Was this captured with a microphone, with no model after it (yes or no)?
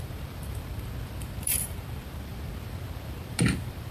no